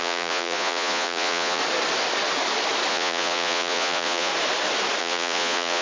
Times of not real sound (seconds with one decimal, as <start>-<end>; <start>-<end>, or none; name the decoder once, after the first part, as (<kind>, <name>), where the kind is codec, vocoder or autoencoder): 0.0-1.6 (vocoder, Vocos); 2.9-4.3; 5.0-5.8